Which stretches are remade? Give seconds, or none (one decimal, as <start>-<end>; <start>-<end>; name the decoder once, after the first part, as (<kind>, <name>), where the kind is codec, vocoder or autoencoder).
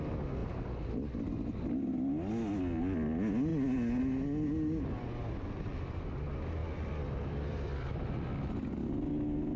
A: 6.6-8.5 (vocoder, BigVGAN v2)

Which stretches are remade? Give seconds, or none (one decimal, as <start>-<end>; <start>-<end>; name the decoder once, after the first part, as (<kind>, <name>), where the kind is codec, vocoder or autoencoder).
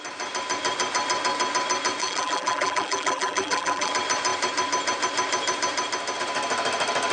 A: 2.0-3.9 (vocoder, BigVGAN v2)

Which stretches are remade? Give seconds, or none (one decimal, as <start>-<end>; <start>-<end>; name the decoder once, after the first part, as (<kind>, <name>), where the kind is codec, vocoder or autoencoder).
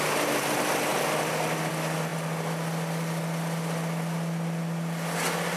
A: none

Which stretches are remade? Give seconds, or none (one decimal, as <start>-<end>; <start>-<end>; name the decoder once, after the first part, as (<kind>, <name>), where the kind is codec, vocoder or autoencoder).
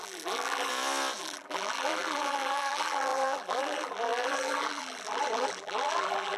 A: 0.0-0.7 (vocoder, BigVGAN v2); 1.2-6.4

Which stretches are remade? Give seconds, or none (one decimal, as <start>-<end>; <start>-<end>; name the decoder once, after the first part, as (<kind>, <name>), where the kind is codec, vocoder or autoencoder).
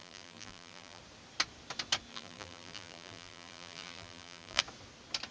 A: 0.0-1.0 (vocoder, BigVGAN v2); 2.1-4.6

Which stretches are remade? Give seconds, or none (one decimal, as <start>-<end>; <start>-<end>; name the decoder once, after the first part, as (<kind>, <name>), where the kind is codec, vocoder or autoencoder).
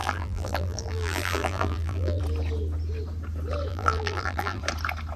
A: 0.0-2.2 (vocoder, BigVGAN v2); 3.7-4.6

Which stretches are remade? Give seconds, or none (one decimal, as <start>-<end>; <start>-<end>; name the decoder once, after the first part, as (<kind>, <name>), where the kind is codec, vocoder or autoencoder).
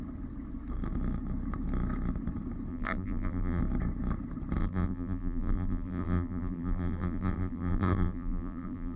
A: 2.7-3.6 (vocoder, BigVGAN v2); 4.6-9.0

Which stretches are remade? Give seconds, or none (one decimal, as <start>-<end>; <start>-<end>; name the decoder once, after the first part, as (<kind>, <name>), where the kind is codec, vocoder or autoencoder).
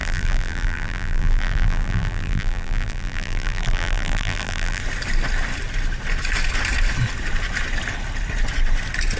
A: 0.0-4.8 (vocoder, BigVGAN v2)